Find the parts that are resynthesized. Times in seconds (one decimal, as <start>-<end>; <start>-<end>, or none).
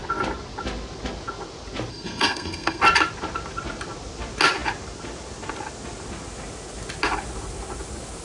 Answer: 1.9-2.8